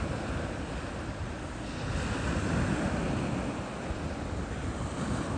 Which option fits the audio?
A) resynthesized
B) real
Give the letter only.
B